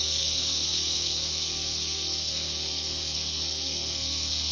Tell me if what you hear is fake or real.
fake